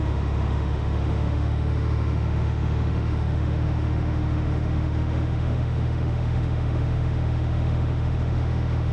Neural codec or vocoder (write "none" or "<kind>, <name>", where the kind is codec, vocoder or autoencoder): autoencoder, DAC-VAE